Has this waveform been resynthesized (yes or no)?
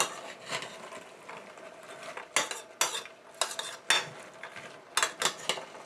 no